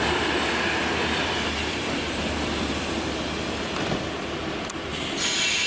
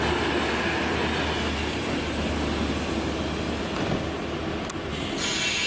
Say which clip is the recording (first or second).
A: second